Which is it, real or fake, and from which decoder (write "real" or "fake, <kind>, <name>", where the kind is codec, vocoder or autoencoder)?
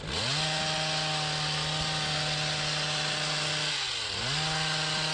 real